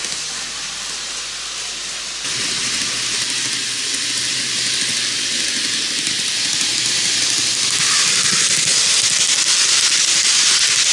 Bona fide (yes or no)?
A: yes